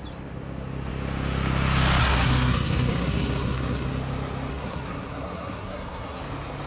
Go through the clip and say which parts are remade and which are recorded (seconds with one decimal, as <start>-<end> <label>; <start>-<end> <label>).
0.0-2.0 recorded; 2.0-3.9 remade; 3.9-4.5 recorded; 4.5-6.2 remade; 6.2-6.7 recorded